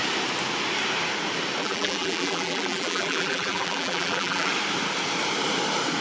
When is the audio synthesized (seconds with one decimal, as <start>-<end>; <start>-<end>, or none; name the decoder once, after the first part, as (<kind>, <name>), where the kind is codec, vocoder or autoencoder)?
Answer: 1.6-4.5 (vocoder, BigVGAN v2)